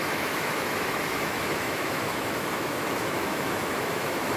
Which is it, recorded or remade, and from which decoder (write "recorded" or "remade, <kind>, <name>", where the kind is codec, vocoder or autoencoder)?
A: remade, autoencoder, DAC-VAE